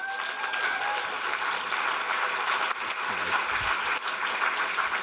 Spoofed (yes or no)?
no